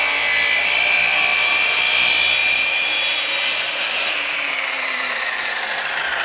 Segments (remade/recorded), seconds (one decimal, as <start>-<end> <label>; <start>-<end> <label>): 0.0-1.3 recorded; 1.3-1.8 remade; 1.8-2.4 recorded; 2.4-5.7 remade; 5.7-6.2 recorded